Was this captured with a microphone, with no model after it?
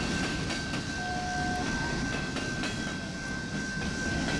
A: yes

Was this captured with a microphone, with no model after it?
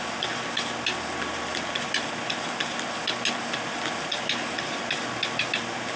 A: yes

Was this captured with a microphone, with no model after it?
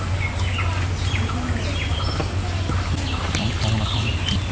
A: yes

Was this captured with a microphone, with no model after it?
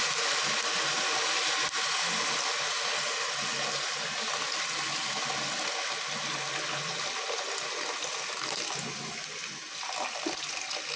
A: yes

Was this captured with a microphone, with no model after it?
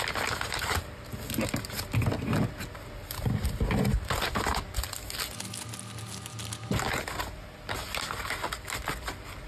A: yes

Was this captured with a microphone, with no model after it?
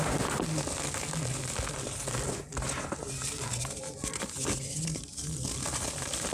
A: yes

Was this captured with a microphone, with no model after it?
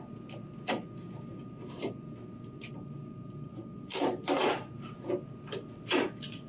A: yes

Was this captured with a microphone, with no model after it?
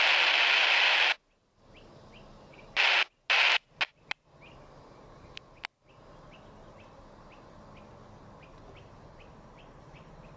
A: yes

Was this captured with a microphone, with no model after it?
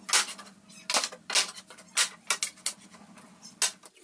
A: yes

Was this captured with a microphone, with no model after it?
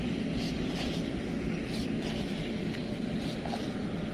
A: yes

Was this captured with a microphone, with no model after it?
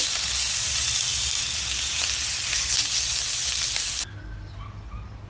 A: yes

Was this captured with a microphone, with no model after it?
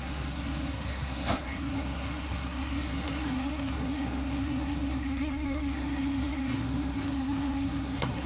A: no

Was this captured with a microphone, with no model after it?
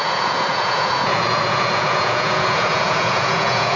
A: no